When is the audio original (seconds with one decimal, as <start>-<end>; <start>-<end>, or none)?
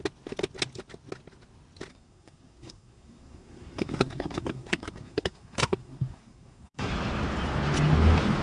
0.0-1.9; 6.9-8.4